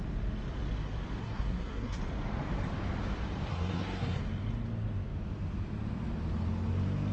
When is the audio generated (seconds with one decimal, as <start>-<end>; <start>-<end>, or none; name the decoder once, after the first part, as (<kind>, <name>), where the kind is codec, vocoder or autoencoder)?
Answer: 1.2-2.0 (codec, SNAC); 3.5-4.2